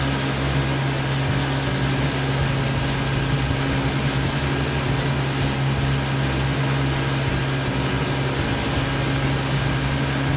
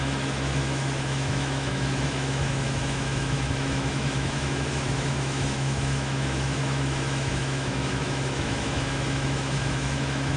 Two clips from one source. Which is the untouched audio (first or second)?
first